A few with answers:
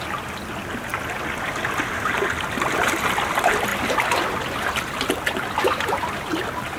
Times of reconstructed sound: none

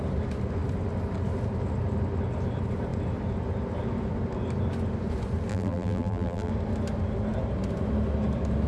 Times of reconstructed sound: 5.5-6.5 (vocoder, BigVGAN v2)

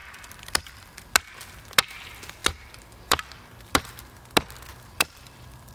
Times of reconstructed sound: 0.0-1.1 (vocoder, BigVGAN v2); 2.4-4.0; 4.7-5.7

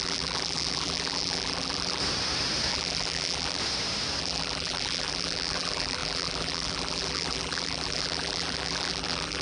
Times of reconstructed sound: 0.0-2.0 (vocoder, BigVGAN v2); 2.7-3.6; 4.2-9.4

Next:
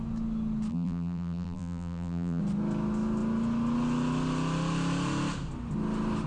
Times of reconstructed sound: 0.7-2.4 (vocoder, BigVGAN v2)

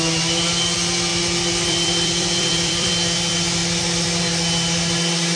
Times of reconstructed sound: 1.1-2.9 (vocoder, BigVGAN v2)

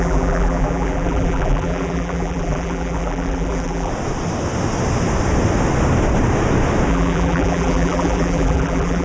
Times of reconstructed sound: 0.0-3.9 (vocoder, BigVGAN v2); 6.9-9.0

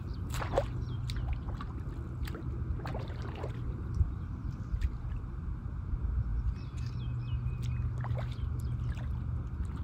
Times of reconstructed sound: 2.9-5.4 (vocoder, BigVGAN v2)